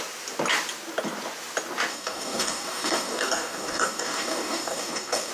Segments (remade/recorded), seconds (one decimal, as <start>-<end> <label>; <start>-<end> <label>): 0.0-1.9 recorded; 1.9-5.3 remade